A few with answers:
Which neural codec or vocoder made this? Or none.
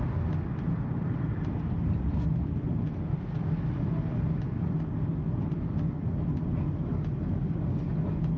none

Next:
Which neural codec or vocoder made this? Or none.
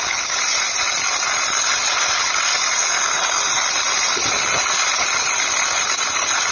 none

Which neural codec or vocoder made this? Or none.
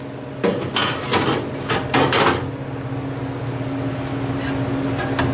none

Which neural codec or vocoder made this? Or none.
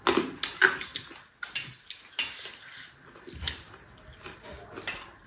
none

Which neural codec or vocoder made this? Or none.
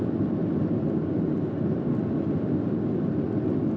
none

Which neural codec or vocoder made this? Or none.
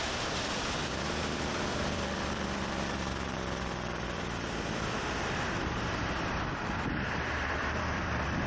vocoder, BigVGAN v2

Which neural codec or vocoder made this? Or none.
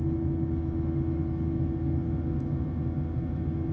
autoencoder, DAC-VAE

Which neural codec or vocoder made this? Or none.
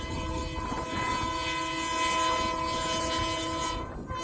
none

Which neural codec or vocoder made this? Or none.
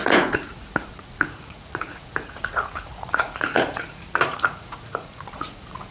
vocoder, Vocos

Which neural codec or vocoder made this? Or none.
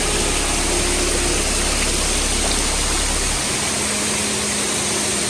none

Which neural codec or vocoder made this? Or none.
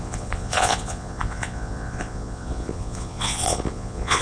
vocoder, Vocos